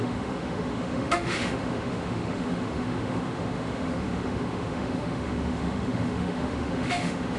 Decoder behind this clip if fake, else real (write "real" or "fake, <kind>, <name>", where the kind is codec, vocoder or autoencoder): fake, autoencoder, DAC-VAE